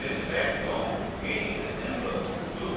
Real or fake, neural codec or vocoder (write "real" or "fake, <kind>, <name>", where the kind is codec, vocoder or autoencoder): fake, vocoder, BigVGAN v2